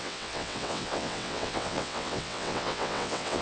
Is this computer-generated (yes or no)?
yes